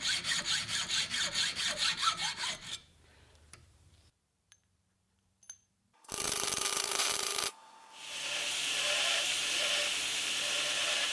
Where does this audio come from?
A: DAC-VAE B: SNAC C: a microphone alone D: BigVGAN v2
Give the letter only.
D